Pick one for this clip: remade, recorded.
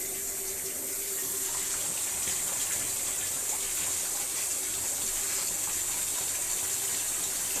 recorded